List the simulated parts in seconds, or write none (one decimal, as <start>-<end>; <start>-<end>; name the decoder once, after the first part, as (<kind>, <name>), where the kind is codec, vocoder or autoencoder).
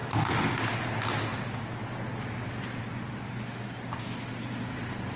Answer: none